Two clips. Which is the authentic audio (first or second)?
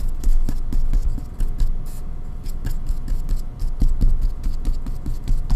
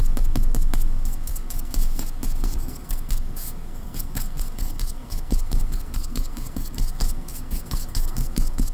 first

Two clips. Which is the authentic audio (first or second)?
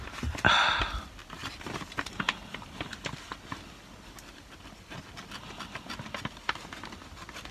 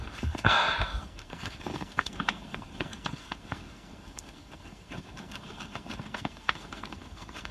first